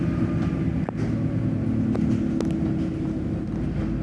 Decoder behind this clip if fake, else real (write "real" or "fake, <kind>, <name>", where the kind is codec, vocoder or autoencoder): real